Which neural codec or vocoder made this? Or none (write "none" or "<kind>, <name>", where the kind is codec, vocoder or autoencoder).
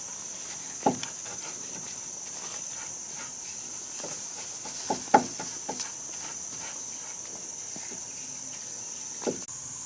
none